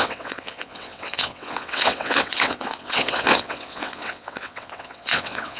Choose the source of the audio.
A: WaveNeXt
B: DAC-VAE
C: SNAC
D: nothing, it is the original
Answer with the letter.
A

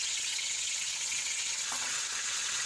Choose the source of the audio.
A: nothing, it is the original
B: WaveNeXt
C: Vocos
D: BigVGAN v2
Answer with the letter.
B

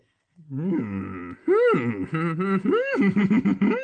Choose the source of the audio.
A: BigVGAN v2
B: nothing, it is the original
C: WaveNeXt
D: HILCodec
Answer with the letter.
B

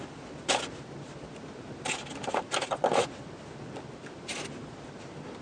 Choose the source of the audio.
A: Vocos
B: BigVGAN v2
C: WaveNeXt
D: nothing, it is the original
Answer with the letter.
D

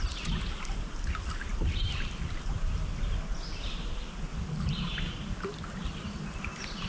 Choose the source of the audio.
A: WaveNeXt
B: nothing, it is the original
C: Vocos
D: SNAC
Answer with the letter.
B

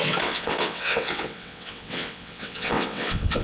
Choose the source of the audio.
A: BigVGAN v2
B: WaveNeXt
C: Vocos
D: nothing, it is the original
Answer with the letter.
B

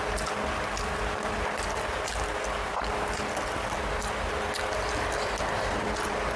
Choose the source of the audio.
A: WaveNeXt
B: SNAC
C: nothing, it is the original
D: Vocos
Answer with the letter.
C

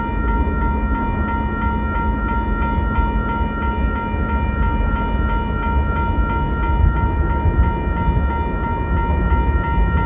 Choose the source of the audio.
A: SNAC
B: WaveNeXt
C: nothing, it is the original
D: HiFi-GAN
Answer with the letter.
C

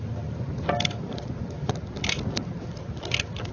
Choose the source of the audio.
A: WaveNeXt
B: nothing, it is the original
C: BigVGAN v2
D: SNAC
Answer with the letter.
B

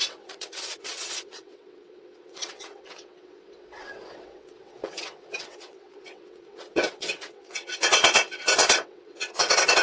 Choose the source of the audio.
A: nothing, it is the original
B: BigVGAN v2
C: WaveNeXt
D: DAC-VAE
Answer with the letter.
C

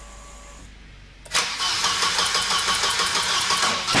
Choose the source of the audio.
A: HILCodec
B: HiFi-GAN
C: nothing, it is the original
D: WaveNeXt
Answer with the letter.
C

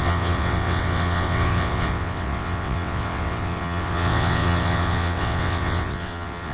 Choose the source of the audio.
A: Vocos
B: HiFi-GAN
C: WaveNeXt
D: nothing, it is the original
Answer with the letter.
C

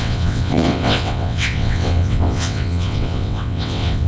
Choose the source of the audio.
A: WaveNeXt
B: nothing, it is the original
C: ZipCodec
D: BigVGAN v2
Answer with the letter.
A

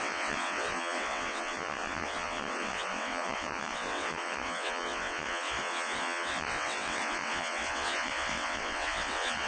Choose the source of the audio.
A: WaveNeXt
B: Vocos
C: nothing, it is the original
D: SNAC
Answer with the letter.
A